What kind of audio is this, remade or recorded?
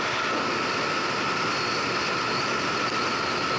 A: recorded